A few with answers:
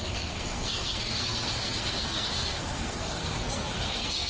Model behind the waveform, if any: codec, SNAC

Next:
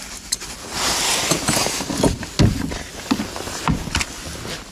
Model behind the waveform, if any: none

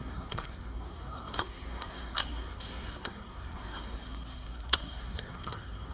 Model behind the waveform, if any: codec, SNAC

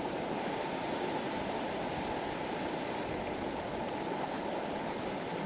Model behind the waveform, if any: none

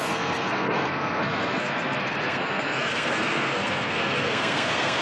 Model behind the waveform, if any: codec, SNAC